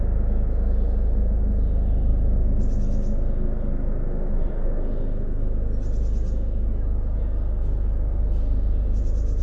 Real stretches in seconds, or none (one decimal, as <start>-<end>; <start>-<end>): 0.0-2.1; 2.6-9.4